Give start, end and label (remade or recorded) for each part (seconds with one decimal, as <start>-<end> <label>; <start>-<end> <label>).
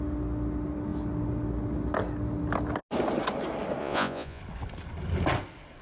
0.0-3.8 recorded; 3.8-4.4 remade; 4.4-5.8 recorded